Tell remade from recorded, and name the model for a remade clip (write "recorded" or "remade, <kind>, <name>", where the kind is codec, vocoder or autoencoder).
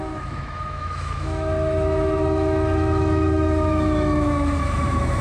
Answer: remade, autoencoder, DAC-VAE